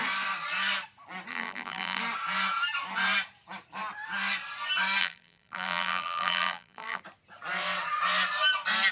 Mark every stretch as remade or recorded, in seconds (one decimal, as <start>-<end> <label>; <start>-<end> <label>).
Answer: 0.0-1.3 recorded; 1.3-2.0 remade; 2.0-5.0 recorded; 5.0-7.0 remade; 7.0-8.9 recorded